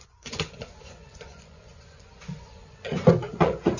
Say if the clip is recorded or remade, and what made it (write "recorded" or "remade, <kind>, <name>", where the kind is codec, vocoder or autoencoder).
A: remade, vocoder, Vocos